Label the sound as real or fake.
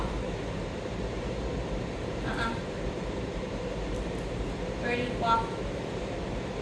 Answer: fake